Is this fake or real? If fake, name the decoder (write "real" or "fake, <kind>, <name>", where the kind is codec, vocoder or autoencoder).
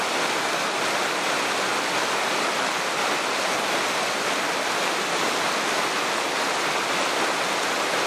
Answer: real